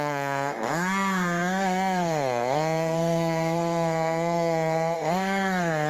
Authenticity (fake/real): fake